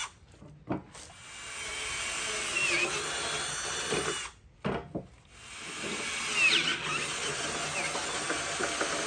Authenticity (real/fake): real